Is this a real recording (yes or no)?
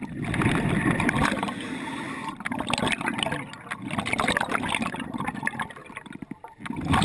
yes